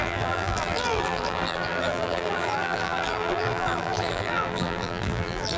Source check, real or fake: fake